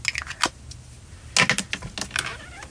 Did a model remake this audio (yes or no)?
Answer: no